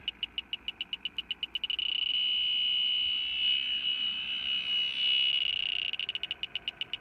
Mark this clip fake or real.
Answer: real